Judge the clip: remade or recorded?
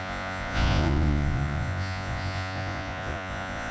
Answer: remade